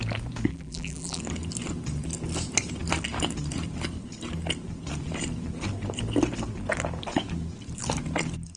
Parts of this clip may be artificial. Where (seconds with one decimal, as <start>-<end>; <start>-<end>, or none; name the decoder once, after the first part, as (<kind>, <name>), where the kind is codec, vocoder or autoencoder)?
0.5-1.2 (vocoder, BigVGAN v2)